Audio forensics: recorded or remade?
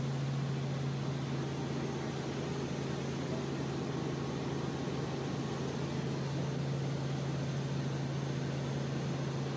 recorded